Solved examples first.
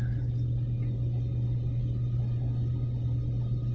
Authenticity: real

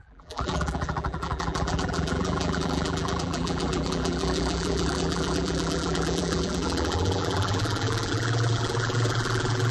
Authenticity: fake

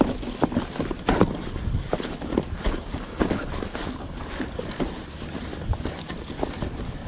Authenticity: fake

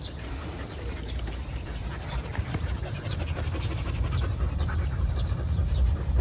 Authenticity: fake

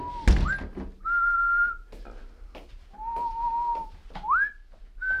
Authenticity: real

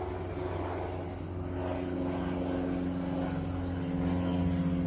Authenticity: real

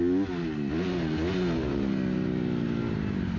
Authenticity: real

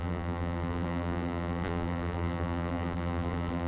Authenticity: fake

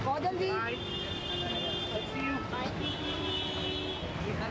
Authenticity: real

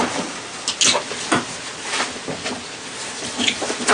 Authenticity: real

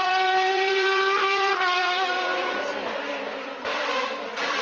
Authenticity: fake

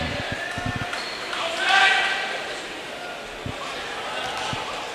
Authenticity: real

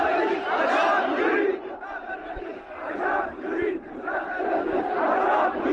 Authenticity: fake